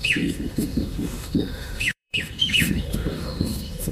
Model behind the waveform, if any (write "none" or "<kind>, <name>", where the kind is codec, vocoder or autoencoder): autoencoder, DAC-VAE